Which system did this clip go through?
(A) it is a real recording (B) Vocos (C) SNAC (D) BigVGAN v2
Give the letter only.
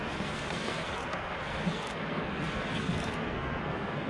C